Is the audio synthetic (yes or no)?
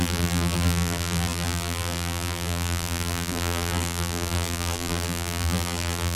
yes